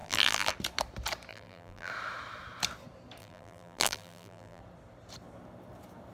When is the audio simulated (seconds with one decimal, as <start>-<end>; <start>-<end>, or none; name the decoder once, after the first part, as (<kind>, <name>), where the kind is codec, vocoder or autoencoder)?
0.0-0.5 (vocoder, BigVGAN v2); 1.3-1.9; 3.2-4.6